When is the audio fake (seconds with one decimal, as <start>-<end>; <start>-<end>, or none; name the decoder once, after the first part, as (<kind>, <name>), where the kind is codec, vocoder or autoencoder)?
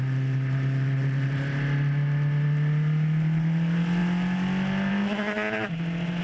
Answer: none